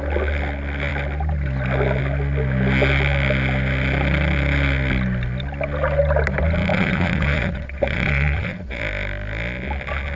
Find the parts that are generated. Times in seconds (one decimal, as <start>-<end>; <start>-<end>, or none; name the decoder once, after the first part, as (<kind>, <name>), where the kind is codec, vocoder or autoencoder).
6.7-8.8 (vocoder, WaveNeXt)